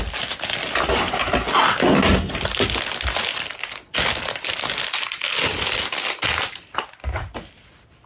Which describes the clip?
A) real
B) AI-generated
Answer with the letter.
A